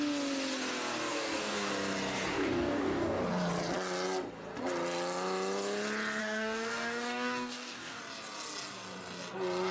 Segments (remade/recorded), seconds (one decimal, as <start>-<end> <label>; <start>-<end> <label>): 0.0-1.1 recorded; 1.1-1.7 remade; 1.7-2.3 recorded; 2.3-3.2 remade; 3.2-6.2 recorded; 6.2-8.0 remade; 8.0-9.7 recorded